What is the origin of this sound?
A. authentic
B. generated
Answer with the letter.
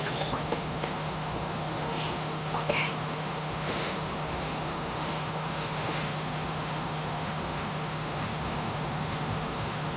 B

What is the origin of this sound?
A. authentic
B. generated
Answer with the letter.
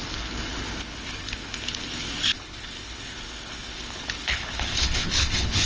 B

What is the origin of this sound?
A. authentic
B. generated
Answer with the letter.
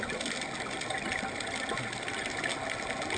A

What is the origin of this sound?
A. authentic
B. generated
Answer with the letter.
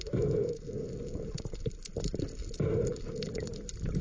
A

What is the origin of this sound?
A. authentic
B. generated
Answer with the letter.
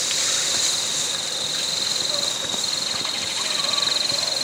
A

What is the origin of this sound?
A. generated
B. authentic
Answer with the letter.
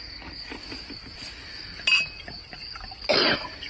B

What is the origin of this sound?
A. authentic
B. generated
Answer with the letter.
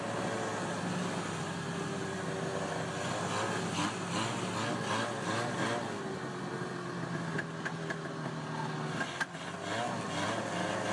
A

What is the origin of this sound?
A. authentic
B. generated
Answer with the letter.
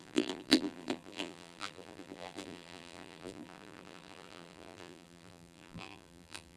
B